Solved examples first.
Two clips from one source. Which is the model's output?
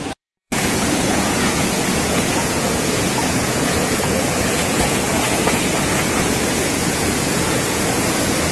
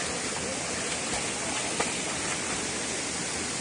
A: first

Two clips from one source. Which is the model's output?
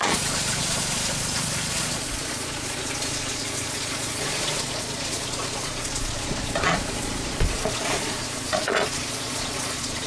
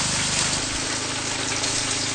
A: first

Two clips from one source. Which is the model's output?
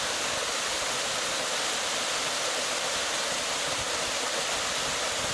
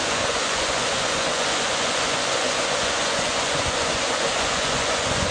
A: second